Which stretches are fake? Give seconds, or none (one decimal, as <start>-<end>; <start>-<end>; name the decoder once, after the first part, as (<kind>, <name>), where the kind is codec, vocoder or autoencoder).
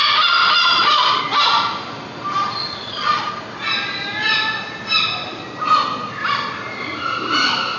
0.4-1.2 (vocoder, Vocos); 2.6-3.3